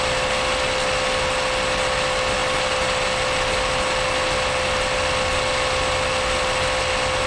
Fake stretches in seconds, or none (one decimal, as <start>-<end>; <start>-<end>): none